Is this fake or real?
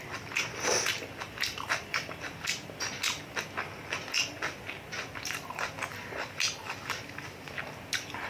real